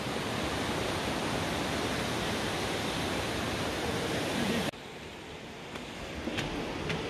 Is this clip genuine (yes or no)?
yes